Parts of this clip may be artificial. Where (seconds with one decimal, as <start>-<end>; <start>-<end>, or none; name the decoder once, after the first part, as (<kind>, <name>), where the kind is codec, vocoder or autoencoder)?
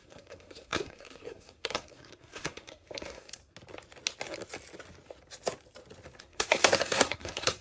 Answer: 0.0-3.4 (codec, SNAC); 6.2-7.6